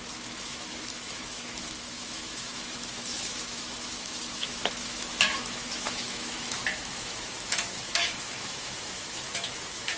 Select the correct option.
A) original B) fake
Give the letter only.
B